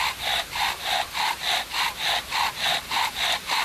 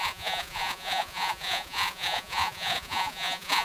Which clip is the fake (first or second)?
second